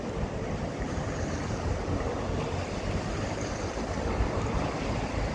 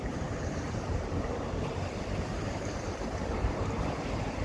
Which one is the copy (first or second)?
second